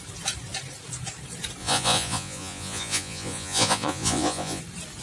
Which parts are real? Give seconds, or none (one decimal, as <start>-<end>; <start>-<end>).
0.0-1.6; 4.6-5.0